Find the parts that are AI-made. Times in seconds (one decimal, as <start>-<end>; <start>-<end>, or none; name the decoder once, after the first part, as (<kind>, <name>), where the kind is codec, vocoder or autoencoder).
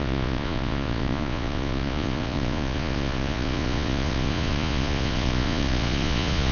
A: 0.0-6.5 (vocoder, Vocos)